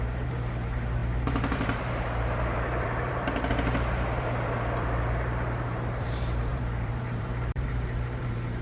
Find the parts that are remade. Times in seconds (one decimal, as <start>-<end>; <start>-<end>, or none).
0.0-8.6

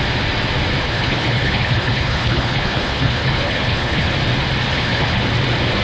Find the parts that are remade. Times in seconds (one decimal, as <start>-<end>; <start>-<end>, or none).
0.8-4.1; 4.7-5.2

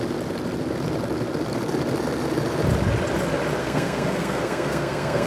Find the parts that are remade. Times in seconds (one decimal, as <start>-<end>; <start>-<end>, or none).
3.6-5.3

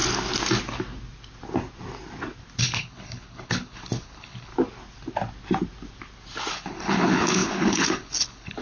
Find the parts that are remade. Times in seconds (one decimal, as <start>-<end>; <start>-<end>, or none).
2.6-4.5; 6.5-8.6

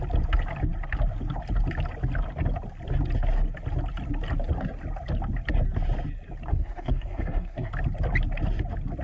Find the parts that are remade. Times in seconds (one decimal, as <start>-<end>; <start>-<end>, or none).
6.5-7.7

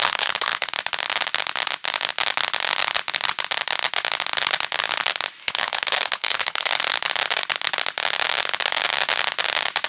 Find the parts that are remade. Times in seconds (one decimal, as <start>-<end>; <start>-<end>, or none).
0.0-0.7; 5.4-6.7

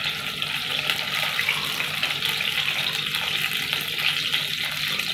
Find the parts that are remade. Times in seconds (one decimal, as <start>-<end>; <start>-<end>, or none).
0.7-1.4